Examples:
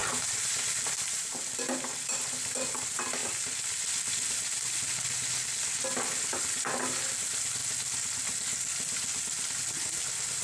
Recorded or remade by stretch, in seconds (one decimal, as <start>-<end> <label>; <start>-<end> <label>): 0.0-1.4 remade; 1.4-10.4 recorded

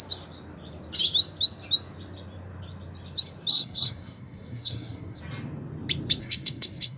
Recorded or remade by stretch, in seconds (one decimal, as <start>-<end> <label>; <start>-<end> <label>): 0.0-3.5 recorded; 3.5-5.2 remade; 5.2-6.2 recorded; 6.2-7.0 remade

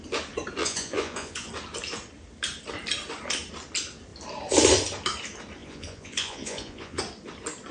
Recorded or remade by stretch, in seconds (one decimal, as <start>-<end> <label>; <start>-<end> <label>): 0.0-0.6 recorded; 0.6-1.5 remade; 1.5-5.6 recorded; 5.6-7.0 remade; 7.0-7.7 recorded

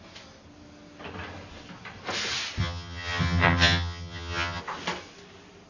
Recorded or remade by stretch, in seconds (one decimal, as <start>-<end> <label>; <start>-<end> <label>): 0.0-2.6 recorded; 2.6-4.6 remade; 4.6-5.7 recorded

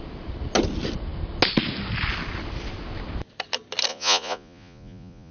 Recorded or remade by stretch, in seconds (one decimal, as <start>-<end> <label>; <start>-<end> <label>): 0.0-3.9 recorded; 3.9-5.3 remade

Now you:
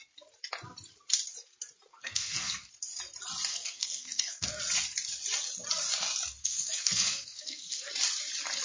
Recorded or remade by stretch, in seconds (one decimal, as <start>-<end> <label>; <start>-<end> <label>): 0.0-1.9 recorded; 1.9-2.7 remade; 2.7-3.5 recorded; 3.5-4.6 remade; 4.6-6.4 recorded; 6.4-7.9 remade; 7.9-8.6 recorded

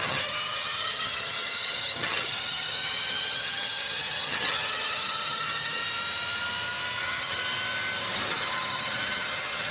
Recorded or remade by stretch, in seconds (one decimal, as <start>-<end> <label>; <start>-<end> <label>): 0.0-5.8 remade; 5.8-7.0 recorded; 7.0-7.4 remade; 7.4-8.3 recorded; 8.3-9.7 remade